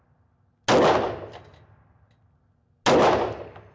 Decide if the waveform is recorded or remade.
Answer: recorded